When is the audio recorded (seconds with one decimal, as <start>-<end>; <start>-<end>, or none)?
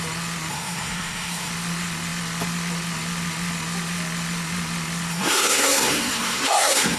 0.0-0.5; 1.5-5.1